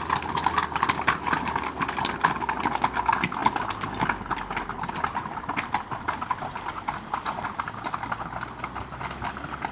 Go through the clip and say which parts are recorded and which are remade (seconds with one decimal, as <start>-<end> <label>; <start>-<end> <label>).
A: 0.0-9.7 recorded